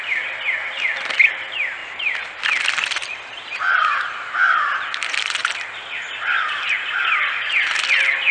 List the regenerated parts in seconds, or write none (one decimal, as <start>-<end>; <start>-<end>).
1.8-3.9